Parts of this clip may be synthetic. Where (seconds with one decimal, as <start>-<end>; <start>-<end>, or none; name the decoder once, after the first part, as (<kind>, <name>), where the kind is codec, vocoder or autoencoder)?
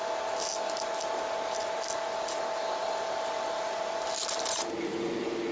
none